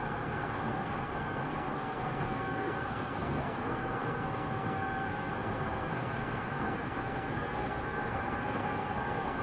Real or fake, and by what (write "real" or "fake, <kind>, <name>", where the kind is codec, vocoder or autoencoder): fake, codec, SNAC